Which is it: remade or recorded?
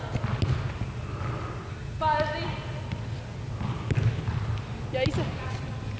recorded